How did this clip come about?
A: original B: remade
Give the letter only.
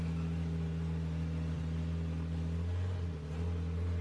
A